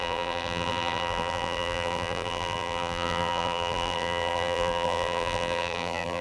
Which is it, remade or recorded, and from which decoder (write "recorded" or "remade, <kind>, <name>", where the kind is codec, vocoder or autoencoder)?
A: remade, vocoder, BigVGAN v2